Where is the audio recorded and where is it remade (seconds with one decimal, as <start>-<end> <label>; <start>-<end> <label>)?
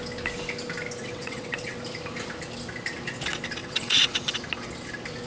0.0-1.0 recorded; 1.0-1.8 remade; 1.8-3.6 recorded; 3.6-4.3 remade; 4.3-5.3 recorded